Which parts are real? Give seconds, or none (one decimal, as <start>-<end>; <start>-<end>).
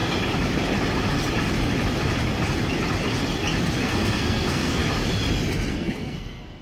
0.0-3.8; 4.8-5.7